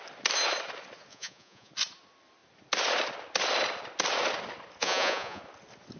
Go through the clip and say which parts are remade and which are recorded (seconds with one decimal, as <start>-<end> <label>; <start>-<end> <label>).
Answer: 0.0-1.1 recorded; 1.1-1.7 remade; 1.7-4.8 recorded; 4.8-5.4 remade; 5.4-6.0 recorded